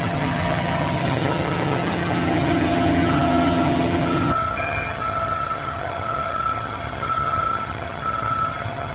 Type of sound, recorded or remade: remade